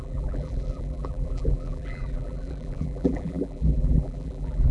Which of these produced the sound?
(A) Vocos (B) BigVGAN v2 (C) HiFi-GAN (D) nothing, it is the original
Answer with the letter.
B